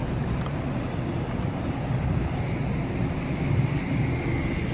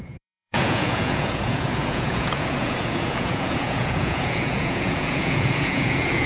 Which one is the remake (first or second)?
second